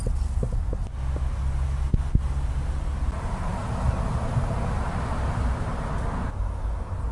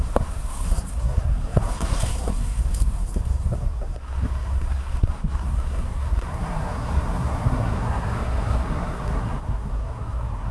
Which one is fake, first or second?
second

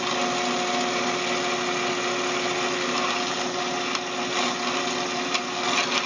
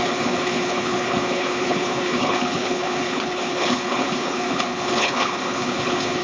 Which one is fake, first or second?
second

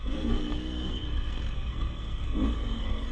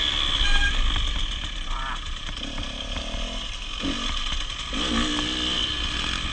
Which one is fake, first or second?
first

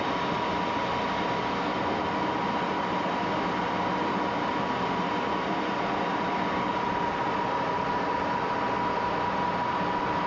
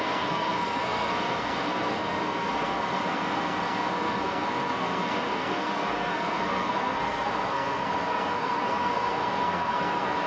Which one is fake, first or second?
second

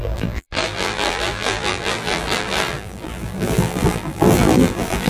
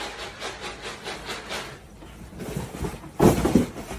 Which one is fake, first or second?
first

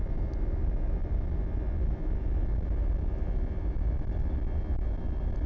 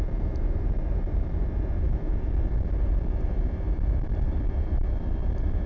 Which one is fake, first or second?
second